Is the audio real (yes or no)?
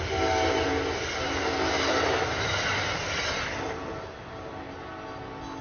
yes